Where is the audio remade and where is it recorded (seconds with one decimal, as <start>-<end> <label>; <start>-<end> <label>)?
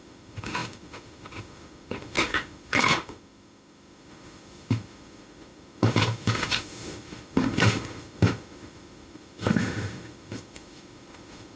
0.0-11.6 remade